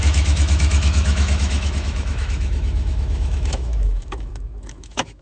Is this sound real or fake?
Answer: fake